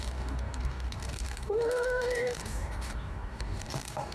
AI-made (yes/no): yes